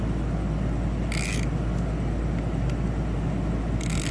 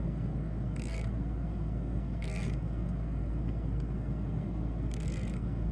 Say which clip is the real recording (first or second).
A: first